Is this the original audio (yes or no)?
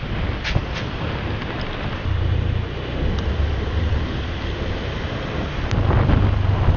yes